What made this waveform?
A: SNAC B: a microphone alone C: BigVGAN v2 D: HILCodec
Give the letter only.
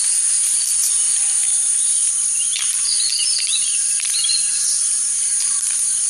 C